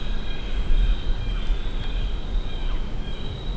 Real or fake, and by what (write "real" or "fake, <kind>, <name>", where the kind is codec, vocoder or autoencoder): real